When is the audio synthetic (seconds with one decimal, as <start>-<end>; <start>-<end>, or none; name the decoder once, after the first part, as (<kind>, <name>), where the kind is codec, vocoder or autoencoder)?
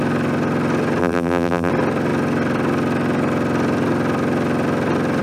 1.0-1.7 (vocoder, BigVGAN v2)